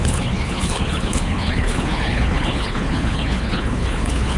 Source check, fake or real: fake